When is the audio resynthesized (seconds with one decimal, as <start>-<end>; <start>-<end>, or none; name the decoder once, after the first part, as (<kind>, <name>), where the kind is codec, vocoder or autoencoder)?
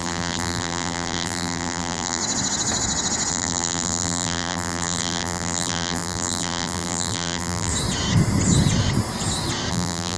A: 0.0-2.2 (vocoder, BigVGAN v2); 3.3-7.7; 9.7-10.2